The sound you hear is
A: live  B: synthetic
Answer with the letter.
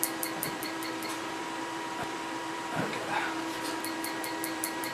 B